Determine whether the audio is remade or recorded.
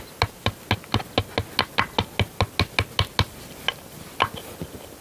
recorded